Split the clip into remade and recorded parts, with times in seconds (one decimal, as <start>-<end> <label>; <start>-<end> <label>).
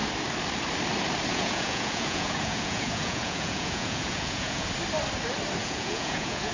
0.0-1.3 recorded; 1.3-4.7 remade; 4.7-5.6 recorded; 5.6-6.5 remade